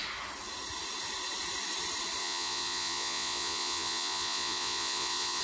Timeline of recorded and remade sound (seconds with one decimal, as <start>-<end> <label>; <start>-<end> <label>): 0.0-2.2 recorded; 2.2-5.4 remade